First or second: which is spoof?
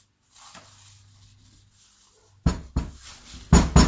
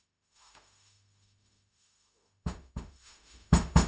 second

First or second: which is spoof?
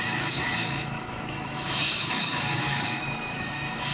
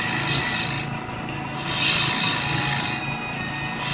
first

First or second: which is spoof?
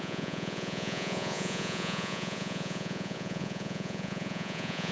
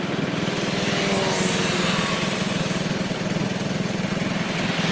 first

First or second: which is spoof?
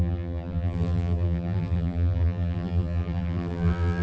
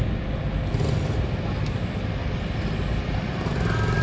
first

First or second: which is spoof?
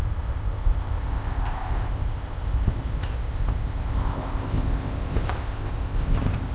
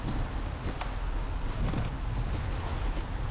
first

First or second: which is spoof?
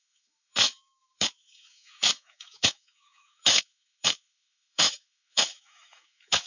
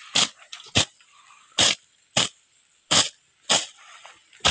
first